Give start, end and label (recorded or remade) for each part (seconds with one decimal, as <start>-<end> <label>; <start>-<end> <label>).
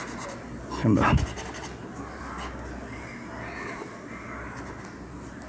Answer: 0.0-5.5 recorded